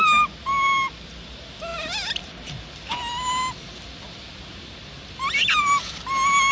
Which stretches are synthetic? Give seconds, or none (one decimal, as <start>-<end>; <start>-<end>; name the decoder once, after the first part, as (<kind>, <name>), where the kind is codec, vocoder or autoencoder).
none